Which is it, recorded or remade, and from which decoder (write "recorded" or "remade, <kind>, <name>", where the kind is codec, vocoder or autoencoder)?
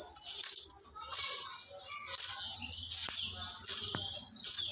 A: recorded